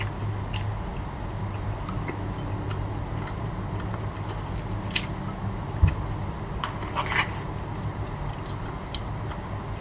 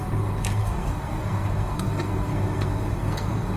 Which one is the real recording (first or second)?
first